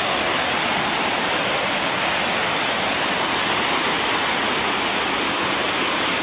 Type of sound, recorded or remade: recorded